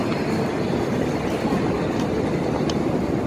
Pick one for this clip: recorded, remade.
recorded